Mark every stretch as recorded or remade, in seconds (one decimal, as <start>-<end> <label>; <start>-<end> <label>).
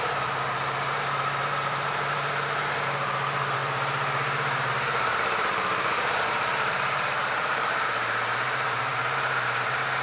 0.0-10.0 remade